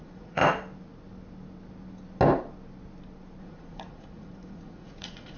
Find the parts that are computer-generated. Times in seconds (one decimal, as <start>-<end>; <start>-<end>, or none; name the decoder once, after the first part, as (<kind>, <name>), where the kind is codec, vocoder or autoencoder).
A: 0.0-0.4 (vocoder, Vocos); 3.4-5.4